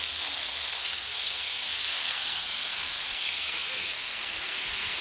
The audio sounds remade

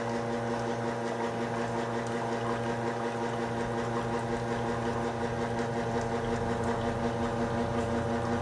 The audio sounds recorded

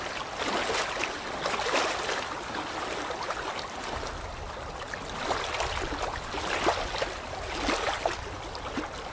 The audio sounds recorded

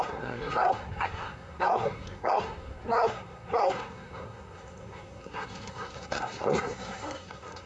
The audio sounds remade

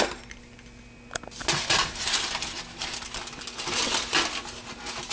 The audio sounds recorded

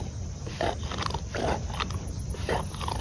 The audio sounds recorded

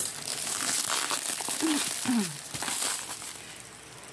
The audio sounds recorded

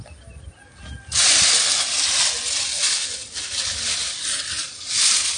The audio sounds recorded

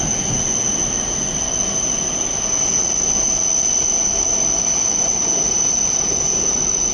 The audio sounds recorded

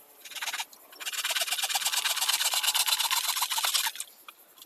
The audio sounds recorded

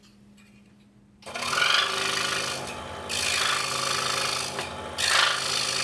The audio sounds recorded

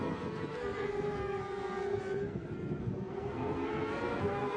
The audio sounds remade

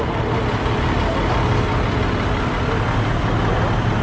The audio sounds recorded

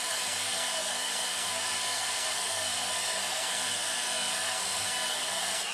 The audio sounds remade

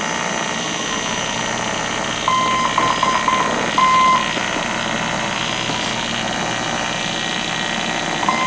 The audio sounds recorded